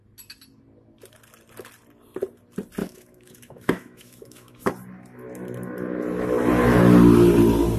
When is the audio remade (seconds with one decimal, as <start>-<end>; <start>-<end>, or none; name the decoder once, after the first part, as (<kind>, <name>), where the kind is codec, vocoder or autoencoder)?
2.8-4.7 (autoencoder, DAC-VAE)